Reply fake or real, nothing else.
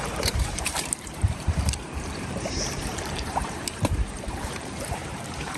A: fake